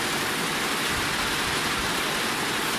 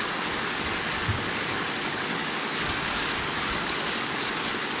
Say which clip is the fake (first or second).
second